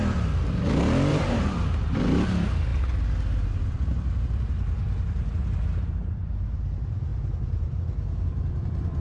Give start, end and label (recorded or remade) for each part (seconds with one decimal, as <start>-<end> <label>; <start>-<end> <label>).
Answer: 0.0-1.1 recorded; 1.1-1.7 remade; 1.7-7.1 recorded; 7.1-7.8 remade; 7.8-9.0 recorded